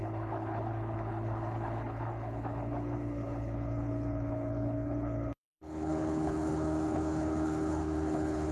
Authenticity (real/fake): fake